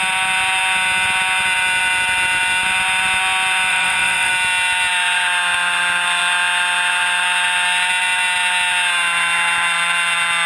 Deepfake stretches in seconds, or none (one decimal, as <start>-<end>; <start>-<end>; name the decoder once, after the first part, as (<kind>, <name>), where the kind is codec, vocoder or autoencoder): 3.7-4.3 (vocoder, WaveNeXt)